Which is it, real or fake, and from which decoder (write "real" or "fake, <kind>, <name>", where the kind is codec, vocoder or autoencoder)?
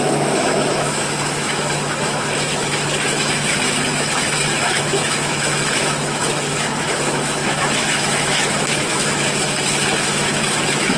fake, autoencoder, DAC-VAE